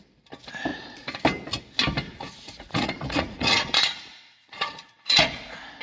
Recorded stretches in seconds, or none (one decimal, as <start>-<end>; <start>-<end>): 0.0-0.7; 1.2-2.1